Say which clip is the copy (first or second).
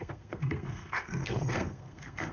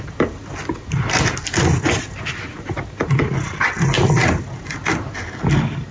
first